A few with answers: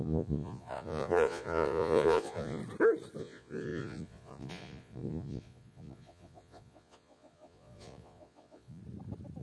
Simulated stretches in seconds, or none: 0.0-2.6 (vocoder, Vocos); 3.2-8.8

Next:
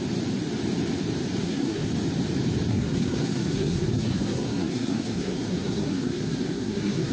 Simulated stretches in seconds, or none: 1.4-1.9 (codec, SNAC); 2.7-7.1

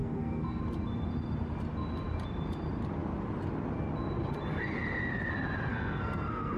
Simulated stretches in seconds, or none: 0.0-0.6 (codec, SNAC); 5.7-6.6

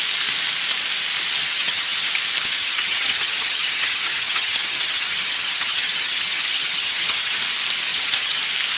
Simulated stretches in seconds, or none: 1.4-2.1 (vocoder, HiFi-GAN); 2.6-7.4; 7.9-8.4

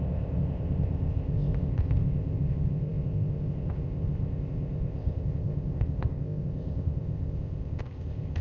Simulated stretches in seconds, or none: 0.0-8.4 (codec, ZipCodec)

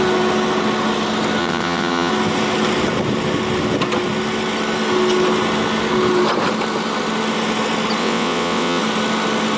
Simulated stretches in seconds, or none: 1.4-2.1 (vocoder, WaveNeXt); 8.0-8.8